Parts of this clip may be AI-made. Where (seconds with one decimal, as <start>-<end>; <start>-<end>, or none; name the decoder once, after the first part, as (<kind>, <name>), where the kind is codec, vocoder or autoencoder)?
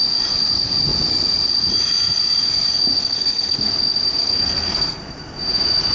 3.0-3.7 (codec, SNAC); 4.2-5.0